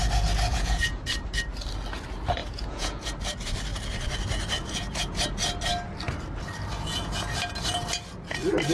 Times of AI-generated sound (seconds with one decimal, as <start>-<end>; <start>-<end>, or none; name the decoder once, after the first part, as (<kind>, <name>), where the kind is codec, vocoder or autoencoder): 0.5-1.0 (vocoder, Vocos); 2.4-3.1